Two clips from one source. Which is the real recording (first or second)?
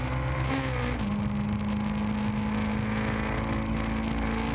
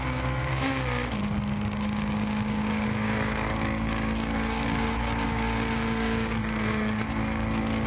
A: first